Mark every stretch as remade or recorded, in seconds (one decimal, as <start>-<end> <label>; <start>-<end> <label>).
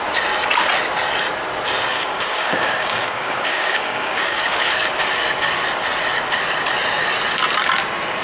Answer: 0.0-1.9 recorded; 1.9-4.4 remade; 4.4-8.2 recorded